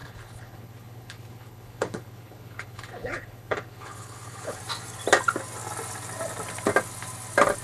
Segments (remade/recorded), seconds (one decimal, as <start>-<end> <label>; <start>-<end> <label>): 0.0-4.6 remade; 4.6-7.6 recorded